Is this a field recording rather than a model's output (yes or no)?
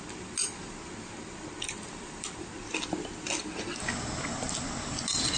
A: yes